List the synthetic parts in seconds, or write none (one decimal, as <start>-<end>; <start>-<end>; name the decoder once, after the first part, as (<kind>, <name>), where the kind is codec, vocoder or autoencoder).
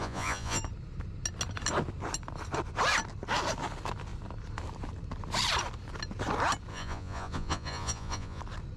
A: 0.0-0.6 (vocoder, Vocos); 6.7-8.4